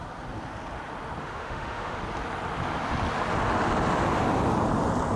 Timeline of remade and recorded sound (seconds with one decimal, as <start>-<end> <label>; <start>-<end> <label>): 0.0-1.2 recorded; 1.2-2.0 remade; 2.0-5.2 recorded